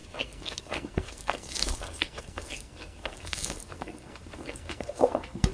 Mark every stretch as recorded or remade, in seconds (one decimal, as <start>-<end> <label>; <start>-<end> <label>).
0.0-5.5 remade